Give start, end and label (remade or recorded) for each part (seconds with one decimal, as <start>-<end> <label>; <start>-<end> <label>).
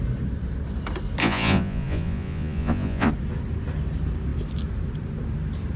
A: 0.0-1.2 recorded; 1.2-3.1 remade; 3.1-5.8 recorded